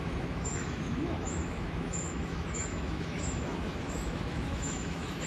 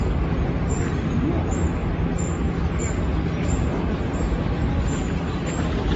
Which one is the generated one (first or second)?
first